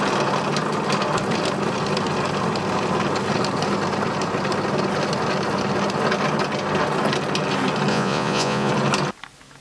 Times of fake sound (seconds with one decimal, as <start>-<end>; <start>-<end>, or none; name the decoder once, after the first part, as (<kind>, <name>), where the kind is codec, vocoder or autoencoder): 7.9-8.7 (vocoder, Vocos)